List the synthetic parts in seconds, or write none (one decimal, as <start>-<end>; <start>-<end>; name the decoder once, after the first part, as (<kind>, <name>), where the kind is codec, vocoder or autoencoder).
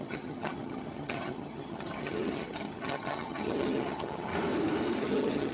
0.0-4.3 (vocoder, HiFi-GAN); 5.0-5.5